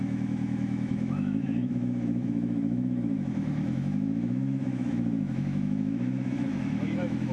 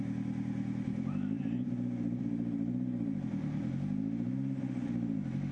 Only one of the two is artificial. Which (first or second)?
first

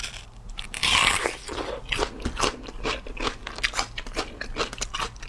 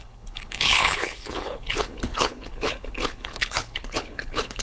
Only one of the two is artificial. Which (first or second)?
second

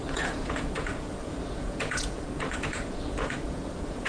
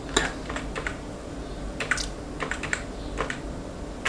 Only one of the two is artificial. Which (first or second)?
first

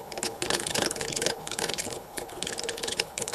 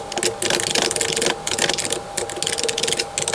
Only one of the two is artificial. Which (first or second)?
first